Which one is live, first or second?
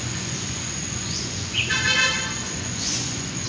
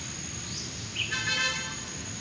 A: second